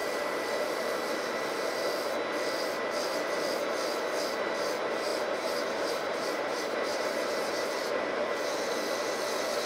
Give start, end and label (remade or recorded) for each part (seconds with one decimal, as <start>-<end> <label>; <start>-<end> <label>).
0.0-5.1 recorded; 5.1-7.7 remade; 7.7-9.7 recorded

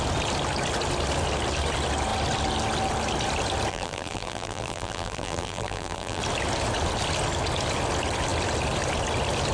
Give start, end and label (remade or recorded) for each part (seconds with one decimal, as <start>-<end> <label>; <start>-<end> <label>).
0.0-3.7 recorded; 3.7-6.2 remade; 6.2-9.5 recorded

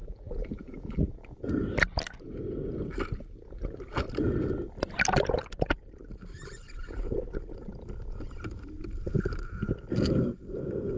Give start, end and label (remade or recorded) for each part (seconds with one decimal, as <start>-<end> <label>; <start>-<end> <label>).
0.0-1.4 remade; 1.4-11.0 recorded